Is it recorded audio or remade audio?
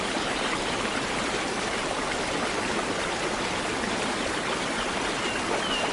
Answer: recorded